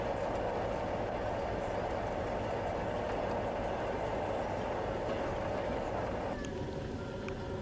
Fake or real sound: real